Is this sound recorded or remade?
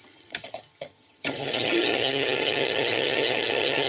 remade